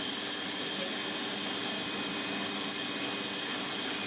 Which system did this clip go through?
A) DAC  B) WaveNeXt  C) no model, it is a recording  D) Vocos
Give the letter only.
C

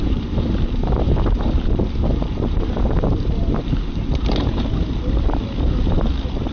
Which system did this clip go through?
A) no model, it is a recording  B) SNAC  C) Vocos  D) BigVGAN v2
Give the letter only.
D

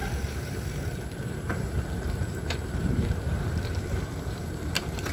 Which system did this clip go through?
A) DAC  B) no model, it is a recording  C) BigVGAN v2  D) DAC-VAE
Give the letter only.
C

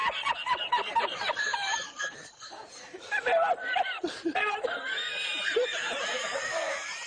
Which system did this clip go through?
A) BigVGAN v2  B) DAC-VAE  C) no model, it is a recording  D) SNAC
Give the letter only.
A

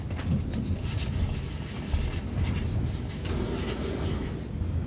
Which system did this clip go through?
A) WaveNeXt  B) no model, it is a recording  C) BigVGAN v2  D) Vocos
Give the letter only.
B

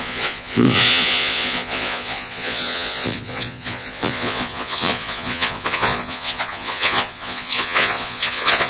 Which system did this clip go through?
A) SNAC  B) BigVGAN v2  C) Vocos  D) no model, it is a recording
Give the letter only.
C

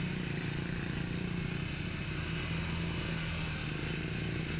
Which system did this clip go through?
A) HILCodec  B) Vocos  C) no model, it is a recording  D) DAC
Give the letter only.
C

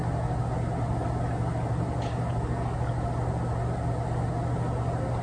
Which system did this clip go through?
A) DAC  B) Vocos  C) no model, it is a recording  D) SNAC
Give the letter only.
C